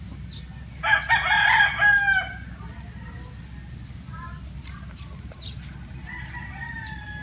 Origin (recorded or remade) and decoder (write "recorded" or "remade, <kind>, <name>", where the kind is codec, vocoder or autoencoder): recorded